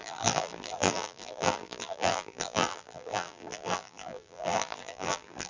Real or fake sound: fake